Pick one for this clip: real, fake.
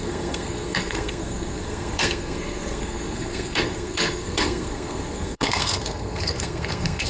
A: fake